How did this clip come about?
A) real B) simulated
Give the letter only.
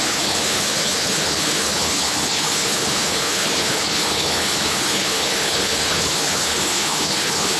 B